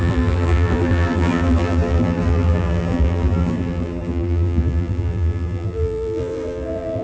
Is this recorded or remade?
remade